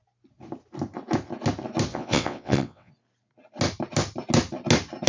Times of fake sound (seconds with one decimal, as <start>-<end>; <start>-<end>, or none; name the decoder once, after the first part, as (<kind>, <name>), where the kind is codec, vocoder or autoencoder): 1.9-2.9 (vocoder, WaveNeXt)